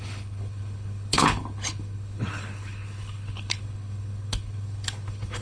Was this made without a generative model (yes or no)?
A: no